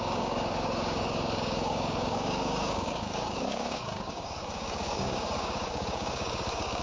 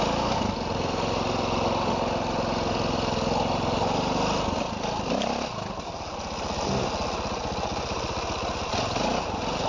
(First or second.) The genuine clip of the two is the second